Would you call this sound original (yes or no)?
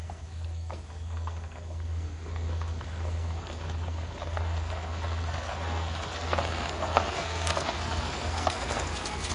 no